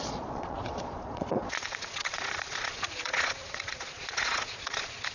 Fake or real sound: fake